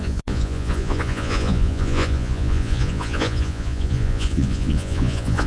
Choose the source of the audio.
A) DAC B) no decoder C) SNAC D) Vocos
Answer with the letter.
D